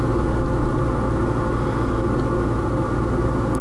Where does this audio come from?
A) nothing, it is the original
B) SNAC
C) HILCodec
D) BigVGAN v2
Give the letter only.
A